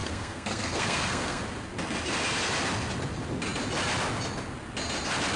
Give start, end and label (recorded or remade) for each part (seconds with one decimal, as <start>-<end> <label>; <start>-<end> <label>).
0.0-1.4 remade; 1.4-5.4 recorded